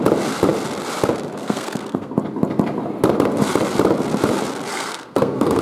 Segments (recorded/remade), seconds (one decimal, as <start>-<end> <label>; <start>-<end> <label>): 0.0-1.4 recorded; 1.4-2.1 remade; 2.1-4.7 recorded; 4.7-5.6 remade